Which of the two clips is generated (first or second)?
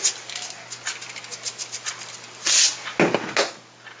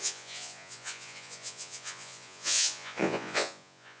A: second